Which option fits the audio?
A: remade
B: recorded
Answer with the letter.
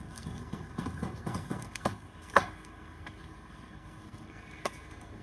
A